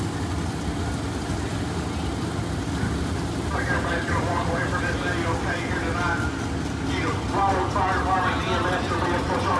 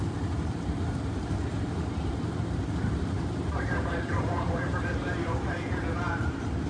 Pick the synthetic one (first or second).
second